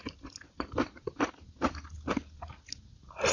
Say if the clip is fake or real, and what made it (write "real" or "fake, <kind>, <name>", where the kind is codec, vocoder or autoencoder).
real